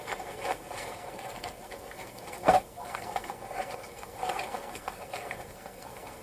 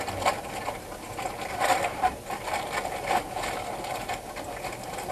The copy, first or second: first